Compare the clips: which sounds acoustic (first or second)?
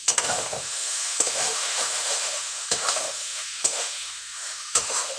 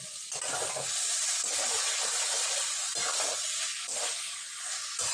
second